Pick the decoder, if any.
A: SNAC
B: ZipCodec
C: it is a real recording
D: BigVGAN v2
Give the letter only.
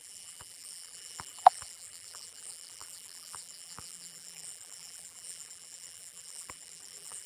D